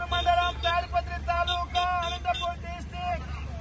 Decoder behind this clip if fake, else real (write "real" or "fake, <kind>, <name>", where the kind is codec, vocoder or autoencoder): fake, vocoder, BigVGAN v2